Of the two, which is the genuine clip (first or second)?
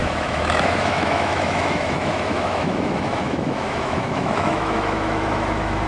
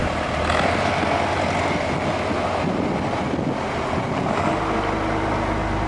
second